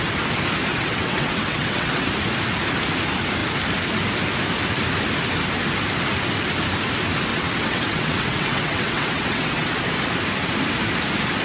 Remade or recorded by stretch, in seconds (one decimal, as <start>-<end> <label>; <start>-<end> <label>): 0.0-0.7 recorded; 0.7-2.1 remade; 2.1-7.3 recorded; 7.3-9.8 remade; 9.8-11.4 recorded